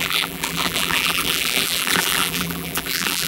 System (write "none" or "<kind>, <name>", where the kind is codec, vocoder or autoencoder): vocoder, BigVGAN v2